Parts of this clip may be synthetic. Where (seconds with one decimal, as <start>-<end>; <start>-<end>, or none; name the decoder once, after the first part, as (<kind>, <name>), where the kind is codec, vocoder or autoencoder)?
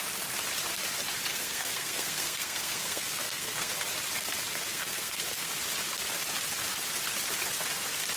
1.3-3.7 (codec, SNAC); 4.7-5.5